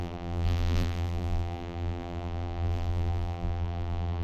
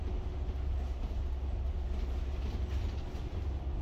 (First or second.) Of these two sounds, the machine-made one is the first